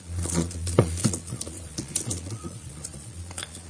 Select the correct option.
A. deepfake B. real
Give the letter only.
A